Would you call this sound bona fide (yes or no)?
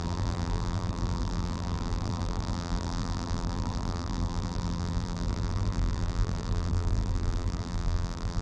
no